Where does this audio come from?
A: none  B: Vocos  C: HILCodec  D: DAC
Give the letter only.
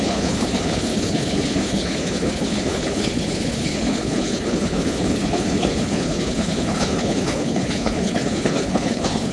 C